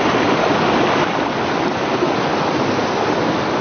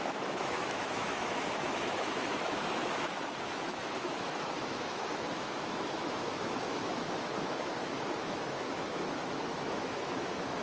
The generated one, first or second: second